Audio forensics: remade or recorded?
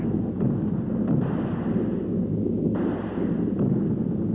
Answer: recorded